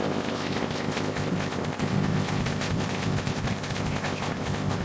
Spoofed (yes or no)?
yes